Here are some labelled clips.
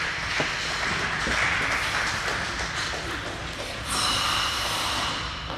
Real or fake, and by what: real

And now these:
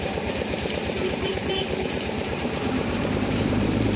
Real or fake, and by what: fake, vocoder, BigVGAN v2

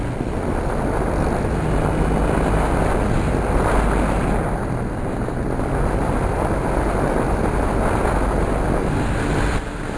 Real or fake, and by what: real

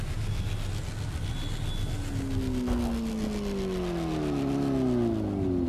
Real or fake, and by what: real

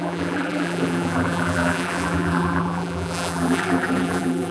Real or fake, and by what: fake, vocoder, BigVGAN v2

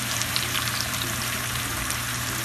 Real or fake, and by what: fake, vocoder, BigVGAN v2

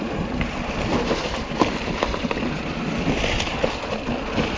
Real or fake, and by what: fake, vocoder, BigVGAN v2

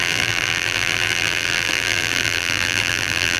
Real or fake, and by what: fake, vocoder, BigVGAN v2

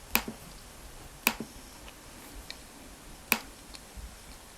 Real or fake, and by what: real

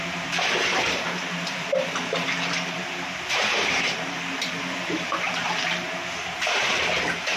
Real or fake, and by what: fake, vocoder, BigVGAN v2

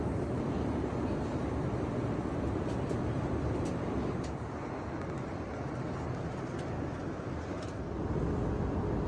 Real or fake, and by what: real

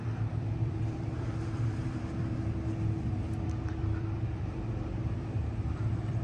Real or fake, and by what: fake, vocoder, BigVGAN v2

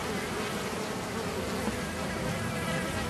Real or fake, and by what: real